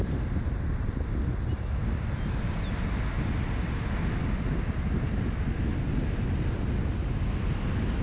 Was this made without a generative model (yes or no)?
yes